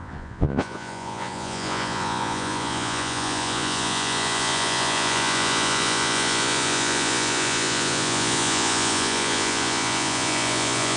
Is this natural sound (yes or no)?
no